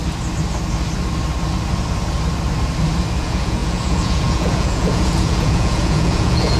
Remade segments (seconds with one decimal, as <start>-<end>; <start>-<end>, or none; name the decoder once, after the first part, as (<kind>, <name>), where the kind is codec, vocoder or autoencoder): 3.2-6.6 (vocoder, Vocos)